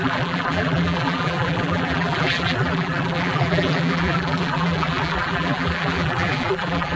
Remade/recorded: remade